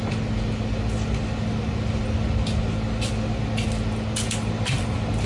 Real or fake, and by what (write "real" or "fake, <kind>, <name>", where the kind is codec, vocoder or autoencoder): real